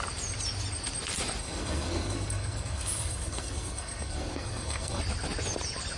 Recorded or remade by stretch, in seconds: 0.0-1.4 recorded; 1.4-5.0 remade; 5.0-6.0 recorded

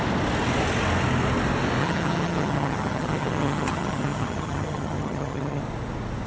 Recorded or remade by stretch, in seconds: 0.0-1.8 recorded; 1.8-5.6 remade; 5.6-6.3 recorded

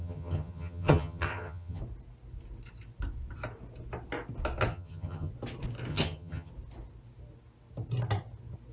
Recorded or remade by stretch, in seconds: 0.0-1.8 remade; 1.8-4.7 recorded; 4.7-5.3 remade; 5.3-5.9 recorded; 5.9-6.5 remade; 6.5-8.7 recorded

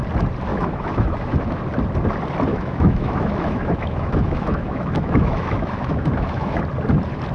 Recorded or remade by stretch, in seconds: 0.0-0.5 recorded; 0.5-1.6 remade; 1.6-2.5 recorded; 2.5-6.6 remade; 6.6-7.3 recorded